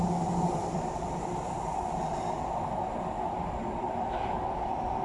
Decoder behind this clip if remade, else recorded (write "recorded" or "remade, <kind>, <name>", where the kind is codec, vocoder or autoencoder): recorded